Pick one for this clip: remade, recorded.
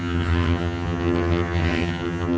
remade